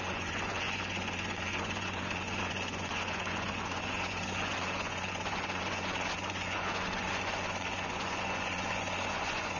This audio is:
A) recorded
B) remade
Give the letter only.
B